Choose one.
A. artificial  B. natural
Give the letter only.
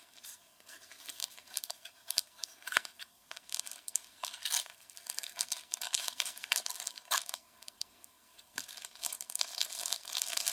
A